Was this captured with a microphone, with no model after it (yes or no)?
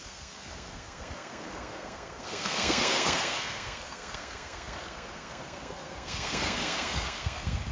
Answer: no